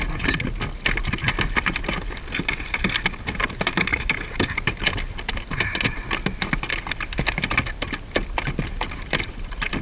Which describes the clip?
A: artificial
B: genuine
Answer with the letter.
B